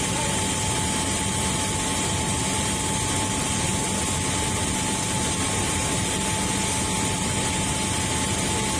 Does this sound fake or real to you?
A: real